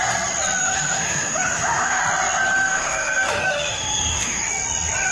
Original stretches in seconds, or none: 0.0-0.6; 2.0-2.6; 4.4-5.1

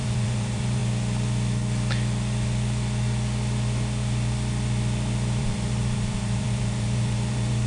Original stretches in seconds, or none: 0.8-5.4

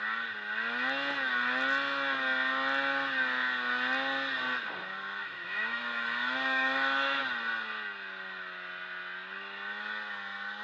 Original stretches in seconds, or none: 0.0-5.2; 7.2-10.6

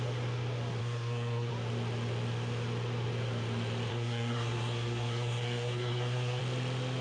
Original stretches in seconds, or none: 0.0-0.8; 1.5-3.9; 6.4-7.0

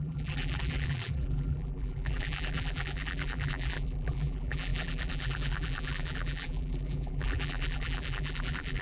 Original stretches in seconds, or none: none

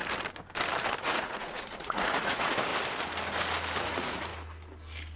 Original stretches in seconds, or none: 0.0-1.0; 2.7-3.8; 4.3-5.2